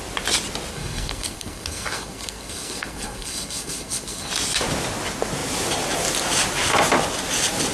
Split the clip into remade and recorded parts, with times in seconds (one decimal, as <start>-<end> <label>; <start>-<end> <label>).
0.0-0.7 recorded; 0.7-4.3 remade; 4.3-7.7 recorded